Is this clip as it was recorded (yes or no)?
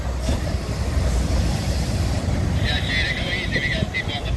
yes